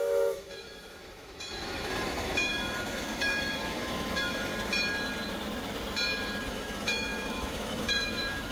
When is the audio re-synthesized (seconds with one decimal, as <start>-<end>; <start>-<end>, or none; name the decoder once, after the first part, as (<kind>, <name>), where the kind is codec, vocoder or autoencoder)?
0.0-4.5 (autoencoder, DAC-VAE); 6.5-8.5

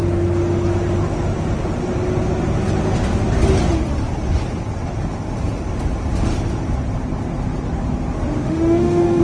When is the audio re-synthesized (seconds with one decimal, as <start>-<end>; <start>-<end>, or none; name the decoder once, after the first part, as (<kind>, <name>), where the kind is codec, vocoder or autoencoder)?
8.4-9.2 (autoencoder, DAC-VAE)

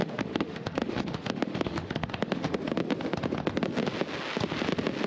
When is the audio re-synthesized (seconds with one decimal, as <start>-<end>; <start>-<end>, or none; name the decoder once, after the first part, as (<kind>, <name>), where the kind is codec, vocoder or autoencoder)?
0.0-2.6 (autoencoder, DAC-VAE)